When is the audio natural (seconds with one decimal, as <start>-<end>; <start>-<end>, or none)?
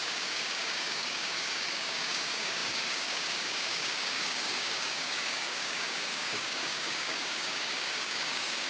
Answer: none